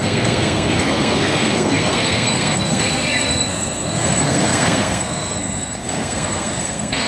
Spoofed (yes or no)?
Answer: yes